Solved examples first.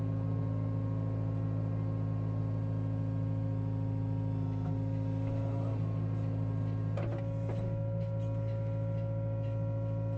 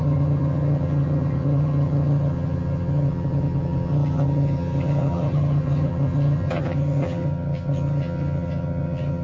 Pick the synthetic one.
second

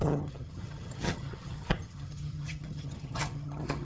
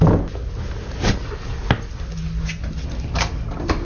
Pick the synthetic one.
first